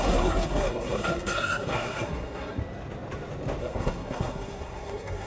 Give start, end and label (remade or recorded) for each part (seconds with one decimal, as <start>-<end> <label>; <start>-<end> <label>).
0.0-2.6 remade; 2.6-3.6 recorded; 3.6-5.3 remade